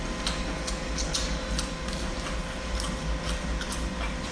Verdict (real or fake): real